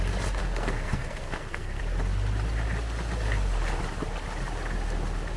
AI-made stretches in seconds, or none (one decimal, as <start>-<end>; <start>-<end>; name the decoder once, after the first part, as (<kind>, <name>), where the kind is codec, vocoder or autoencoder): 0.4-1.8 (codec, SNAC)